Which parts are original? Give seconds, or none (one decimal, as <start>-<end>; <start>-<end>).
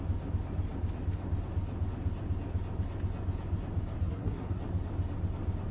0.0-4.0; 4.6-5.7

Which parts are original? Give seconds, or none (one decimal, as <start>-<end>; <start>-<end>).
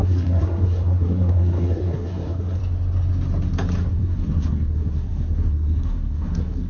2.6-3.9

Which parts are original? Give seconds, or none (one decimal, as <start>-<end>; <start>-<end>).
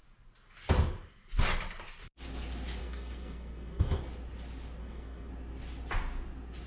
0.0-2.8; 4.0-4.8; 5.3-6.7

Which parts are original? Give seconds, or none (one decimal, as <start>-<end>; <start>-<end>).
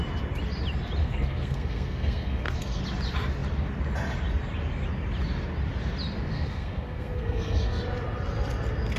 0.0-1.0; 2.8-6.3; 7.8-9.0